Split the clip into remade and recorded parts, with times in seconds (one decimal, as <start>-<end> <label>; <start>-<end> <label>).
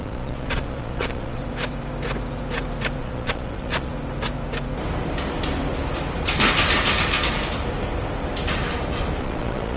0.0-1.4 remade; 1.4-3.0 recorded; 3.0-3.9 remade; 3.9-9.2 recorded; 9.2-9.8 remade